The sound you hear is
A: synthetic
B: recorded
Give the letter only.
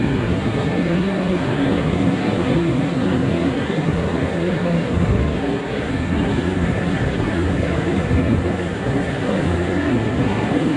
A